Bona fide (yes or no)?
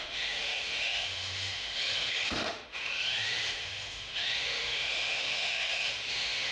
no